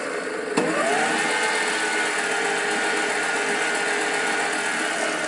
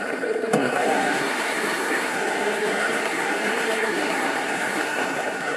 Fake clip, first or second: second